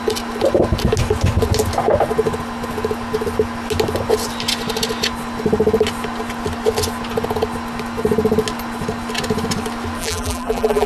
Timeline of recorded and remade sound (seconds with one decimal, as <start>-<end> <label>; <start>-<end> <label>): 0.0-10.0 recorded; 10.0-10.9 remade